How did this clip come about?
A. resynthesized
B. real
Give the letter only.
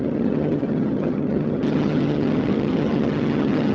A